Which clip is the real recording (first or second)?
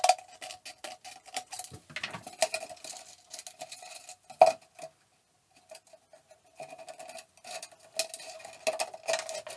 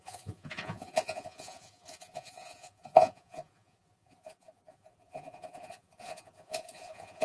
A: first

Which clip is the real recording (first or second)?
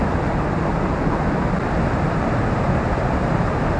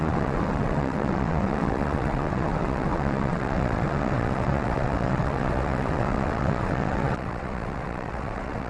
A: first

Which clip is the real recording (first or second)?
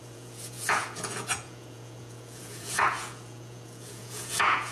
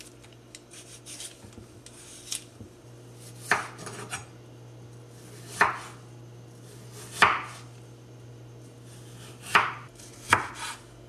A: second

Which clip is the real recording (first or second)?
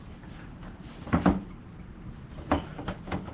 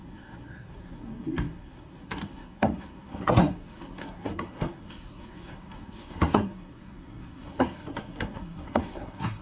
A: first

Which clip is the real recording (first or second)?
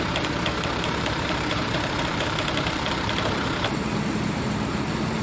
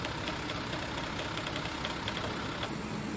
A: second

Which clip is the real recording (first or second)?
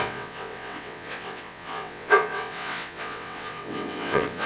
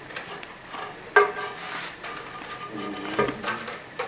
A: second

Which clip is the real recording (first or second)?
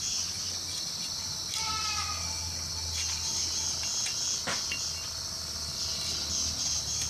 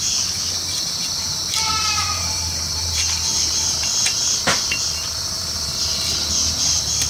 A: first